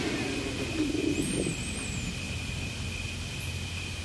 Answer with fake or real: real